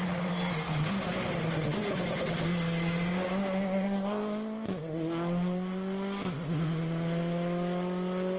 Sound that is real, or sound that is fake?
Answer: real